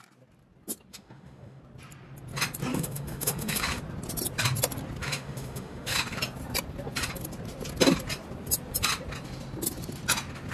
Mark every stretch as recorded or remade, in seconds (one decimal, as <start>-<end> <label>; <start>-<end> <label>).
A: 0.0-0.9 recorded; 0.9-1.6 remade; 1.6-2.7 recorded; 2.7-3.8 remade; 3.8-5.0 recorded; 5.0-6.2 remade; 6.2-10.5 recorded